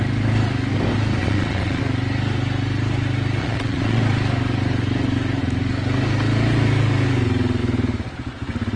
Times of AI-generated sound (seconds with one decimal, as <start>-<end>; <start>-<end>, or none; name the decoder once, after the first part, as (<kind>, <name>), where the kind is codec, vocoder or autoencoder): 1.2-1.8 (vocoder, Vocos); 3.4-4.0